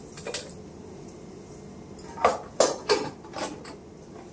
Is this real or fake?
real